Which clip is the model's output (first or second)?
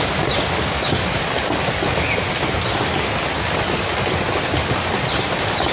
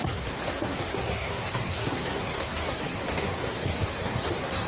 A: second